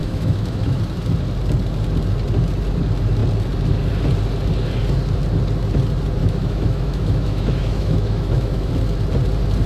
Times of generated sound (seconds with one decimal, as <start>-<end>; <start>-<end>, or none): 0.0-0.8; 6.2-8.7